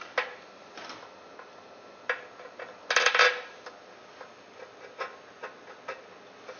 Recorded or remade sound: recorded